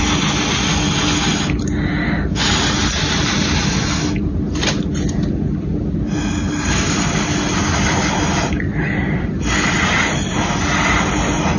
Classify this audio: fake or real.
real